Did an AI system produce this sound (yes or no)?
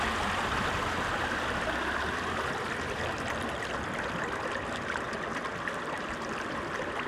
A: no